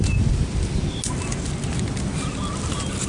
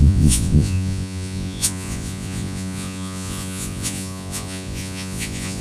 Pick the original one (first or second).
first